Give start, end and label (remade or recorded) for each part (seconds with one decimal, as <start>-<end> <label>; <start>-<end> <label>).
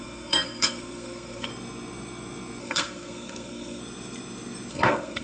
0.0-1.5 remade; 1.5-2.6 recorded; 2.6-3.8 remade; 3.8-4.7 recorded; 4.7-5.2 remade